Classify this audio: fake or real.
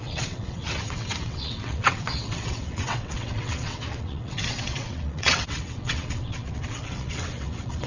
fake